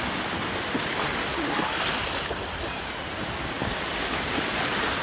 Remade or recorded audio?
recorded